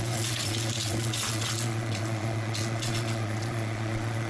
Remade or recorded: remade